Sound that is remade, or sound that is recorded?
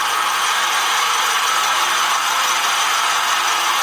remade